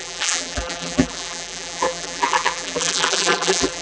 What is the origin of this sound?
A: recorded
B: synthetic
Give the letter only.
B